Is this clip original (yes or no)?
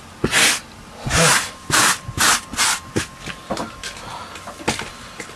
yes